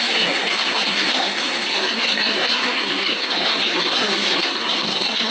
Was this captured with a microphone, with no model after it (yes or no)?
no